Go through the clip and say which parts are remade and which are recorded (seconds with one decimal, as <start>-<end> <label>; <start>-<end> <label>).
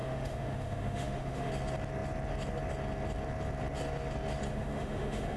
0.0-1.5 remade; 1.5-4.5 recorded; 4.5-5.4 remade